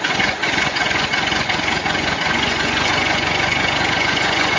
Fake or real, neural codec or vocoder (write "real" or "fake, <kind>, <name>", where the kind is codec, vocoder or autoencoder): fake, vocoder, Vocos